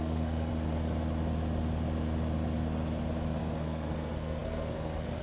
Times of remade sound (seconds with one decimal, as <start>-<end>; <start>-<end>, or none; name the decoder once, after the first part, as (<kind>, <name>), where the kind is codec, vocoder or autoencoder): 0.0-0.5 (codec, SNAC); 3.4-5.2